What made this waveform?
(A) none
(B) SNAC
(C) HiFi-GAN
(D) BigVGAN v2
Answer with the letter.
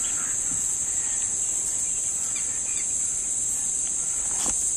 A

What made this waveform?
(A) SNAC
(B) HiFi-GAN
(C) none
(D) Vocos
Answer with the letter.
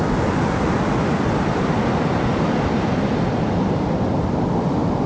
C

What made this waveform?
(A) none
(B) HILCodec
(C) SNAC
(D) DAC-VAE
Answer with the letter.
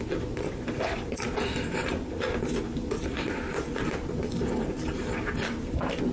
A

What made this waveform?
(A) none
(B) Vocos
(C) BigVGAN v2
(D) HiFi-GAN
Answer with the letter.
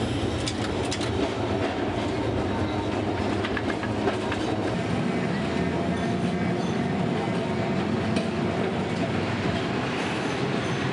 A